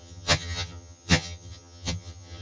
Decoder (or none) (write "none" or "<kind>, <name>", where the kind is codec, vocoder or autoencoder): vocoder, HiFi-GAN